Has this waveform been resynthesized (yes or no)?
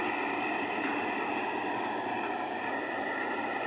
no